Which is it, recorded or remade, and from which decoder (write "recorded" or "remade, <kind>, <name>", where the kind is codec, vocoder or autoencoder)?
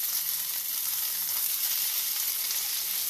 recorded